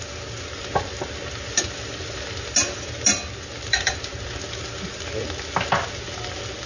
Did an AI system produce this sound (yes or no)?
no